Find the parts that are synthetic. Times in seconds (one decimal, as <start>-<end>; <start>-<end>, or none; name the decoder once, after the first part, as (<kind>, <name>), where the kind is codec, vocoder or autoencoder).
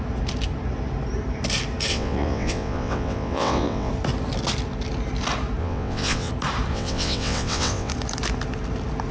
1.9-3.9 (vocoder, WaveNeXt); 5.6-6.3; 6.7-7.9